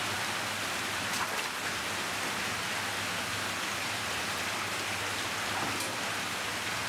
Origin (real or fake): real